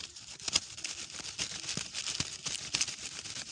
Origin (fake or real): real